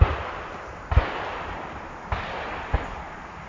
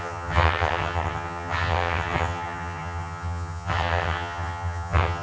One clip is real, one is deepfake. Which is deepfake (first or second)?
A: second